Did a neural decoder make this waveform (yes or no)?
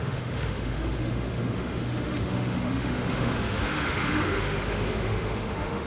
yes